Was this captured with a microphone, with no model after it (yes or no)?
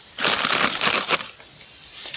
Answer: yes